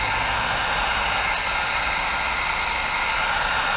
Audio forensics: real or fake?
real